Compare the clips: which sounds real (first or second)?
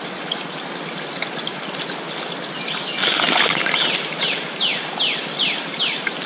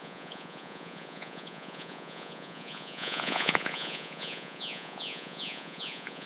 first